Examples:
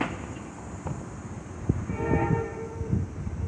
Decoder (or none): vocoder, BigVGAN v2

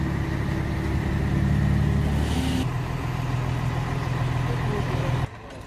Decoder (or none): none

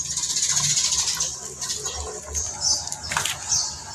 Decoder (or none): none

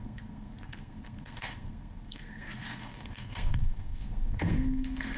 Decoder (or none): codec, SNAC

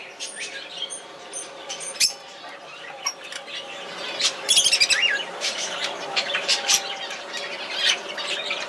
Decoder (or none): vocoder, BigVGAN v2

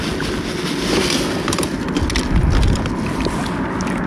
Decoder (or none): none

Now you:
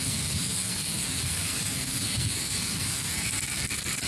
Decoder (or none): codec, SNAC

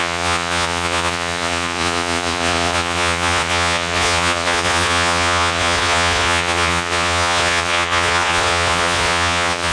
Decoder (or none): vocoder, Vocos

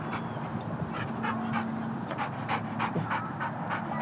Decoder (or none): none